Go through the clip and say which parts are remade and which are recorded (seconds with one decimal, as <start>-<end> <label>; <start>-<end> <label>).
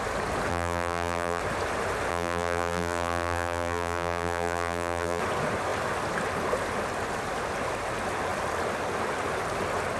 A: 0.0-0.5 recorded; 0.5-1.4 remade; 1.4-2.1 recorded; 2.1-5.2 remade; 5.2-10.0 recorded